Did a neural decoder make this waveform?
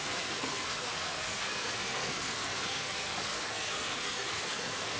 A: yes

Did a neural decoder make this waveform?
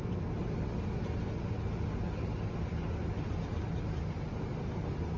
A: no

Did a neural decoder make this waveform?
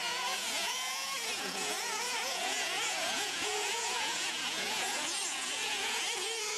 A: yes